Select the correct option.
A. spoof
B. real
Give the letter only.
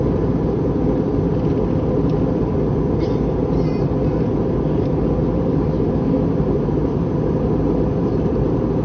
B